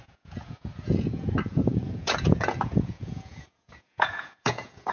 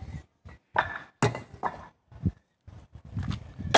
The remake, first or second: first